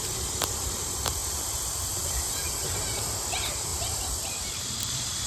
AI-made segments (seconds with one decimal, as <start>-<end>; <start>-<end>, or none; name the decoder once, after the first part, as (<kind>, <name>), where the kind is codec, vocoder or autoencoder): 0.0-5.3 (vocoder, BigVGAN v2)

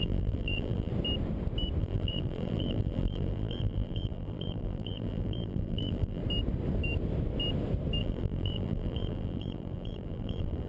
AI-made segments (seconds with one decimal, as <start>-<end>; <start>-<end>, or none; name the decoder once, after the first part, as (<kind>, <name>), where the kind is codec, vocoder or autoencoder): 0.0-0.9 (vocoder, BigVGAN v2); 1.8-6.2; 8.0-10.7

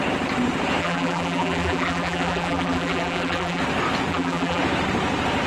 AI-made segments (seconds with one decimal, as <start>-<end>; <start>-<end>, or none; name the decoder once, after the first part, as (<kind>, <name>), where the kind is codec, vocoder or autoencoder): 0.8-3.6 (vocoder, BigVGAN v2); 4.1-4.6